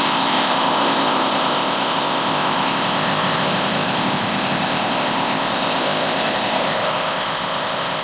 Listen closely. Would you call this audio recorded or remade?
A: remade